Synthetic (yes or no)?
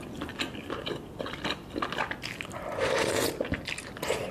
no